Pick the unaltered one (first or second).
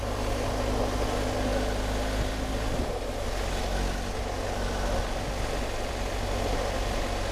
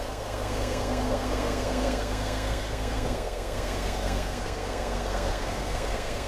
first